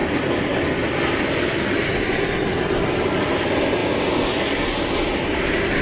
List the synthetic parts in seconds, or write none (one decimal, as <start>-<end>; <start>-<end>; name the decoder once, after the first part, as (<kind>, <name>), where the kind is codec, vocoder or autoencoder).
none